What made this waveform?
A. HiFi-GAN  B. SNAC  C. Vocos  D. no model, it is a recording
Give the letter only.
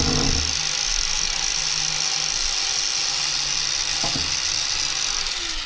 D